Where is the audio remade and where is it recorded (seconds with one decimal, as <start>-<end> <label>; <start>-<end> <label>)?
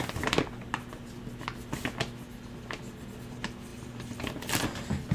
0.0-5.1 recorded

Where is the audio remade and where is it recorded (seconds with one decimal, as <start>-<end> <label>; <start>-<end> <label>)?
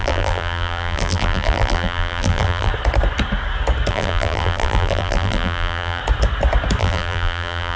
0.0-2.7 remade; 2.7-3.9 recorded; 3.9-6.0 remade; 6.0-6.8 recorded; 6.8-7.8 remade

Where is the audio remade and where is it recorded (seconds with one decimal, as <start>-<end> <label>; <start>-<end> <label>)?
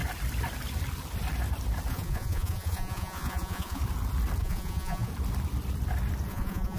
0.0-1.9 recorded; 1.9-3.8 remade; 3.8-4.4 recorded; 4.4-5.1 remade; 5.1-6.3 recorded; 6.3-6.8 remade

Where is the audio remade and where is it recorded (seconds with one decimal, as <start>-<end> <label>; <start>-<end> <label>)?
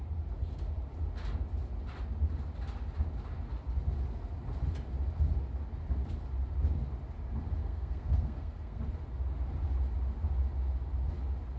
0.0-7.6 recorded; 7.6-8.8 remade; 8.8-11.6 recorded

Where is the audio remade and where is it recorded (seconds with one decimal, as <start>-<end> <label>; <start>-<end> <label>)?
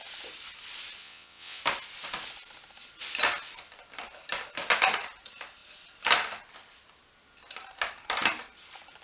0.0-1.0 recorded; 1.0-1.6 remade; 1.6-9.0 recorded